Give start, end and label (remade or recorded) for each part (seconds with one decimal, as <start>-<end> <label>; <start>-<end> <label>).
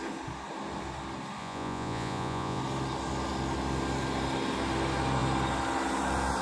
0.0-1.4 recorded; 1.4-2.6 remade; 2.6-6.4 recorded